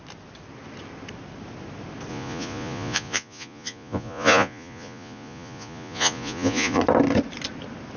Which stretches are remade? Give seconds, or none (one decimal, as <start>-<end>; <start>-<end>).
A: 2.1-6.8